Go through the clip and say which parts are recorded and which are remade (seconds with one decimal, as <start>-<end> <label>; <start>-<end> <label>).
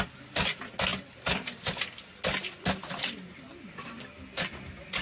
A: 0.0-5.0 recorded